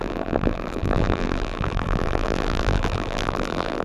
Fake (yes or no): yes